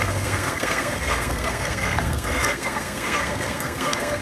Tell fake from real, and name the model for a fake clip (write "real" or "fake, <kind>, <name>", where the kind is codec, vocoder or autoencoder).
fake, codec, SNAC